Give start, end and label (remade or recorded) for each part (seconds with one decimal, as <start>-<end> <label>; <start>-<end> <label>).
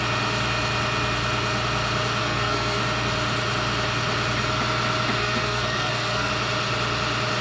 0.0-2.2 recorded; 2.2-2.8 remade; 2.8-5.2 recorded; 5.2-6.3 remade; 6.3-7.4 recorded